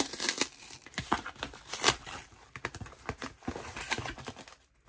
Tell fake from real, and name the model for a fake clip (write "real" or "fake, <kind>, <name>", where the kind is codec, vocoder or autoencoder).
real